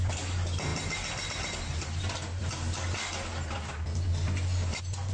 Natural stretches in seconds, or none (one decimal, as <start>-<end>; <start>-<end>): 0.0-5.1